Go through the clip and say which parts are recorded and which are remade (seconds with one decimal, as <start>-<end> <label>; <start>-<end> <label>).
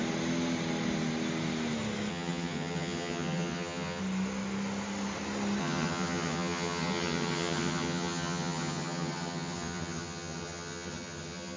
0.0-2.1 recorded; 2.1-4.0 remade; 4.0-5.6 recorded; 5.6-11.6 remade